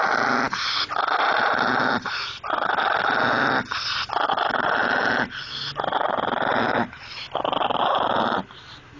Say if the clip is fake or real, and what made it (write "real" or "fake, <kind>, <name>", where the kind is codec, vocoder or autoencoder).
real